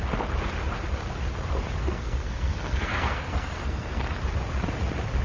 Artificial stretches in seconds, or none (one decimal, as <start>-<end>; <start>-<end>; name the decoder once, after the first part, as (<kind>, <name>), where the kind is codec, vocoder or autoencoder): 1.8-4.2 (codec, SNAC)